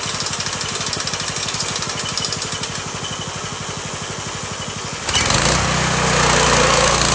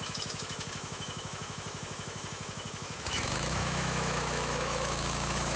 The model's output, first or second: second